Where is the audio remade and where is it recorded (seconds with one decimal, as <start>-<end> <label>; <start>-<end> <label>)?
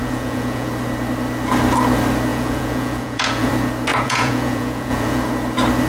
0.0-0.7 remade; 0.7-2.3 recorded; 2.3-3.5 remade; 3.5-3.9 recorded; 3.9-5.3 remade; 5.3-5.9 recorded